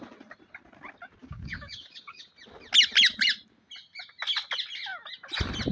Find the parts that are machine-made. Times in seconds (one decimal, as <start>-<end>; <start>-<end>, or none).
1.2-2.3